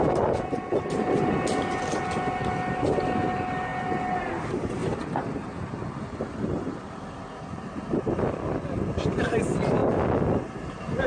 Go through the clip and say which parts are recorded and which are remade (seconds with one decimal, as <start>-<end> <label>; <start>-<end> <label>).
0.0-11.1 recorded